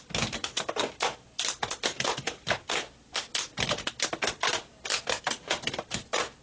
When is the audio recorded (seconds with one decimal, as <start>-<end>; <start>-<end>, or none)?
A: 0.0-6.4